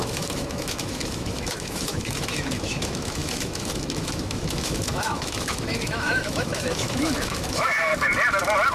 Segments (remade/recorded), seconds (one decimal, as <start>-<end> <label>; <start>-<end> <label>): 0.0-7.9 remade; 7.9-8.7 recorded